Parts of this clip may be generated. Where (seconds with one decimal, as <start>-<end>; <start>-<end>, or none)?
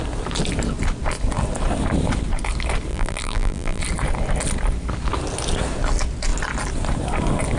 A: 2.9-3.8